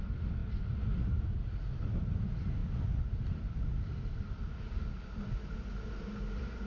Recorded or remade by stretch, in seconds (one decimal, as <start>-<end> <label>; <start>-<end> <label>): 0.0-6.7 recorded